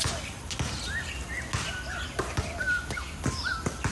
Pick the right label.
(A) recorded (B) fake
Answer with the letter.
A